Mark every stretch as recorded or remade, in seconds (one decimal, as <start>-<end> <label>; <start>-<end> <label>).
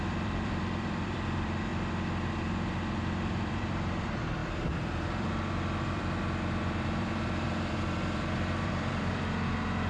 0.0-1.7 remade; 1.7-2.4 recorded; 2.4-9.9 remade